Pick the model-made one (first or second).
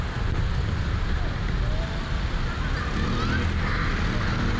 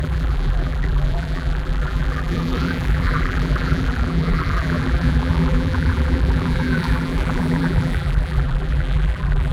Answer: second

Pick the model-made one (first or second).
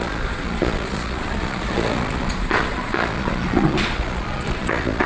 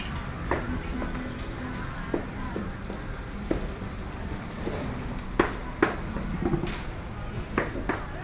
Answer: first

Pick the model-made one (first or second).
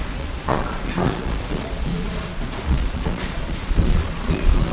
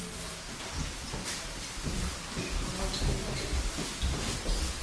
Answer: first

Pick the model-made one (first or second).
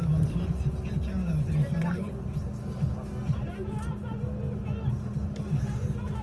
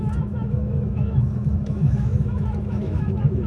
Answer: second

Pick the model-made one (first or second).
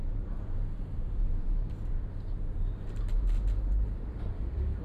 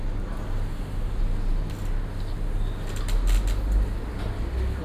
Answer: first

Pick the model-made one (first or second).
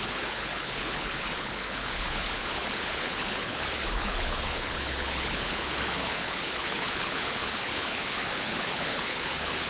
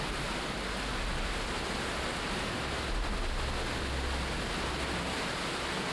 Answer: first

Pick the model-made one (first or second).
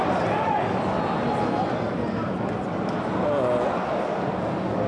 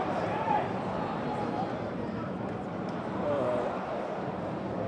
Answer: second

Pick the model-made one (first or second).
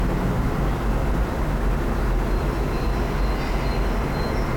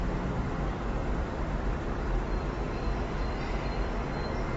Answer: second